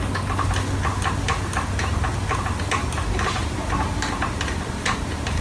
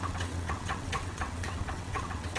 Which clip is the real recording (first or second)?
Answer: first